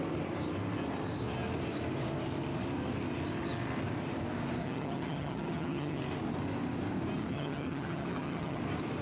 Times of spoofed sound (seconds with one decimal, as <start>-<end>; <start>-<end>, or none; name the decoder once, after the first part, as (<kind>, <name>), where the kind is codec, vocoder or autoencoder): 4.6-6.0 (vocoder, HiFi-GAN); 7.3-8.6